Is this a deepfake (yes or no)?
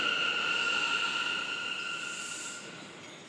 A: no